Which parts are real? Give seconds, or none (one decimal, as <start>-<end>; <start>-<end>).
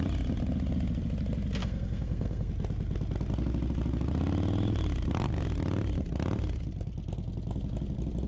0.0-1.6; 2.5-8.3